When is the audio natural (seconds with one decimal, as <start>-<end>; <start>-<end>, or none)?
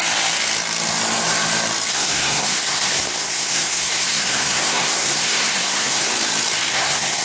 0.0-1.9; 6.1-6.7